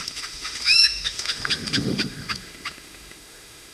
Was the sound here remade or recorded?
remade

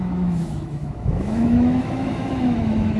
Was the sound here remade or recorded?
remade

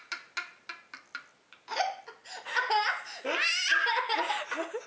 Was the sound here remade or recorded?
recorded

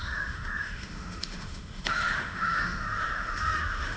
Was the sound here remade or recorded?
remade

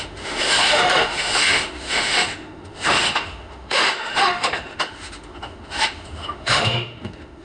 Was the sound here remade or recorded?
remade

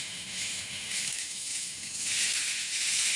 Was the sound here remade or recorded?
remade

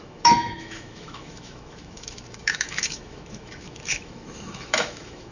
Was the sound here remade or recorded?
remade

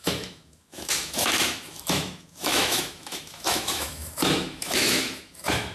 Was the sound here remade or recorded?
remade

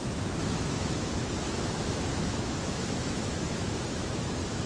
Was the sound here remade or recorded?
remade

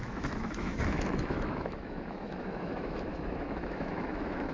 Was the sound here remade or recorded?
remade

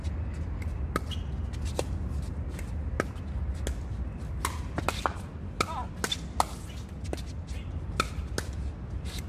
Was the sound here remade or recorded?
recorded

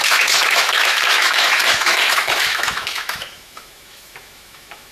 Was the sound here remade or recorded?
remade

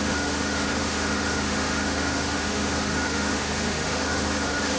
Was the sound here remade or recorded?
remade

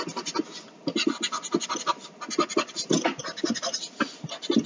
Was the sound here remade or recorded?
recorded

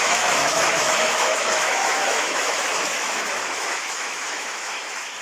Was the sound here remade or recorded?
remade